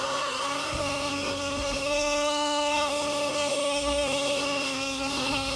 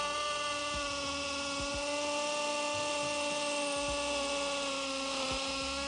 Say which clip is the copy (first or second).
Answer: first